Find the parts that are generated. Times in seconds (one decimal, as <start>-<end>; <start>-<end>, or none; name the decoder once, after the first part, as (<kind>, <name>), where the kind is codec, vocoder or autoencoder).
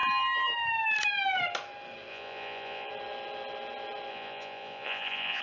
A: 2.1-2.9 (vocoder, Vocos); 4.1-5.4